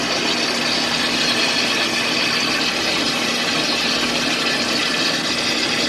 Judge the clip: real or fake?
real